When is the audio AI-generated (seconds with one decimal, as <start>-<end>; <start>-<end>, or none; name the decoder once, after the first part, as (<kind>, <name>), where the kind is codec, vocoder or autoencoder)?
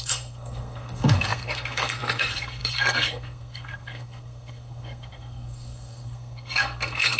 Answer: 0.0-7.2 (codec, SNAC)